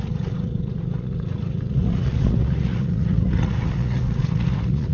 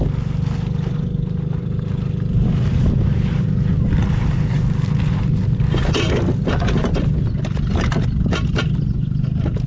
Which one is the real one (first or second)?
second